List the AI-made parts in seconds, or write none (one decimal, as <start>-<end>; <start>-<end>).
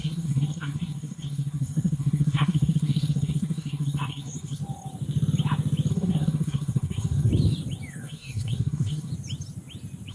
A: 0.0-4.6; 5.9-7.3; 7.9-9.1